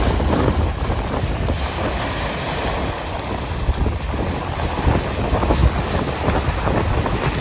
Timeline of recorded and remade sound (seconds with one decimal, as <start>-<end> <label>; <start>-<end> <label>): 0.0-7.4 recorded